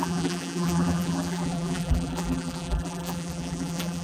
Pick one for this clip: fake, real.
fake